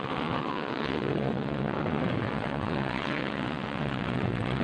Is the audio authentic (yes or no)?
no